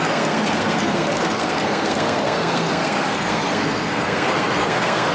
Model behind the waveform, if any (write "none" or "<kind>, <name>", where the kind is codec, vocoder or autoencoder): codec, SNAC